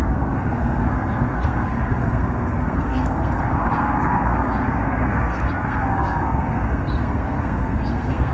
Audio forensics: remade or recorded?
remade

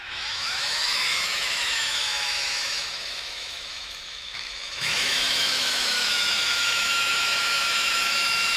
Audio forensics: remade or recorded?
remade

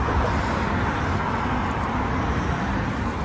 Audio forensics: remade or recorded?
recorded